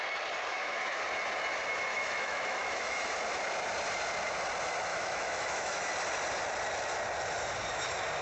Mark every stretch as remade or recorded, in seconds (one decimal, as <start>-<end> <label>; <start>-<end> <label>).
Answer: 0.0-0.5 recorded; 0.5-1.0 remade; 1.0-1.9 recorded; 1.9-3.1 remade; 3.1-4.9 recorded; 4.9-5.9 remade; 5.9-8.2 recorded